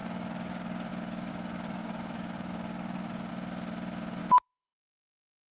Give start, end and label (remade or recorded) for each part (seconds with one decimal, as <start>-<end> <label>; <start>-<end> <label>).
0.0-0.9 remade; 0.9-1.3 recorded; 1.3-3.3 remade; 3.3-4.2 recorded; 4.2-4.9 remade; 4.9-5.5 recorded